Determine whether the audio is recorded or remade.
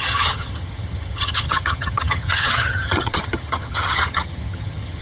remade